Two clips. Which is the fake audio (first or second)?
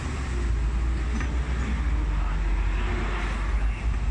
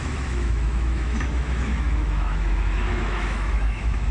second